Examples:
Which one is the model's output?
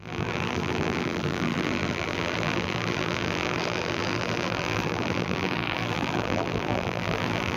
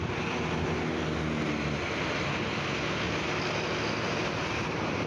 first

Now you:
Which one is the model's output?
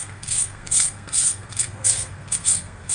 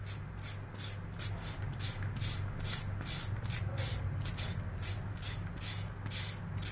first